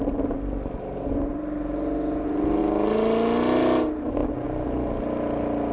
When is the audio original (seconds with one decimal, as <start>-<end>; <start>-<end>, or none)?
0.0-5.7